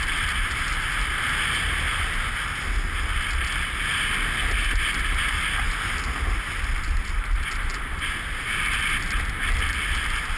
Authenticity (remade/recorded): recorded